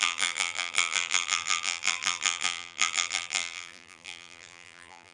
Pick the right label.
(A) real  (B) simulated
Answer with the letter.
B